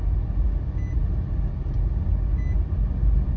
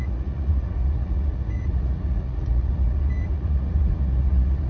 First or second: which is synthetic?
second